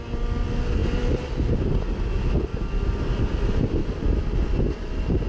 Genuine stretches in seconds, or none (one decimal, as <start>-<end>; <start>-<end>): 0.0-0.8; 1.5-3.8